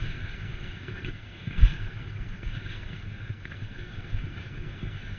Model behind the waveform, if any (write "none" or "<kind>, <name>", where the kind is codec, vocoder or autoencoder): codec, SNAC